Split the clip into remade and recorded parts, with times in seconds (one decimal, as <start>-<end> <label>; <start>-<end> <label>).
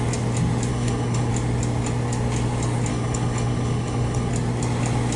0.0-0.7 recorded; 0.7-1.3 remade; 1.3-2.9 recorded; 2.9-4.3 remade; 4.3-5.2 recorded